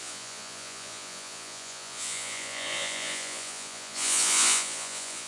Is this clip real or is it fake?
fake